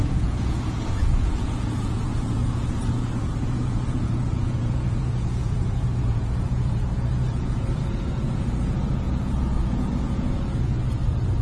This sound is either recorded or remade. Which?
remade